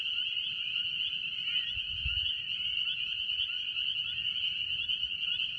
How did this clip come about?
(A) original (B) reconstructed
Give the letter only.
A